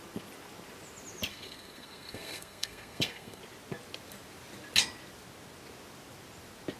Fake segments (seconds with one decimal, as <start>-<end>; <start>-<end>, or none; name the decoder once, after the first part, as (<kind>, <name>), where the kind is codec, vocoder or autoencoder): 1.3-3.4 (codec, SNAC)